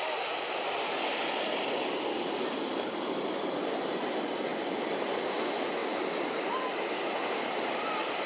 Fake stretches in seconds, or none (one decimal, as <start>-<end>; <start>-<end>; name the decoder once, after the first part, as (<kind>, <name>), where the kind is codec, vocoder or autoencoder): none

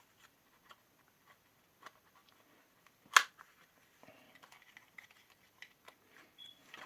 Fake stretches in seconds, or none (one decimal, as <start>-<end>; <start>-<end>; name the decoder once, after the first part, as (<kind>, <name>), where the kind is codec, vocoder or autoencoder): none